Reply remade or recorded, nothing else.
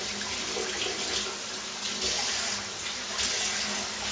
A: recorded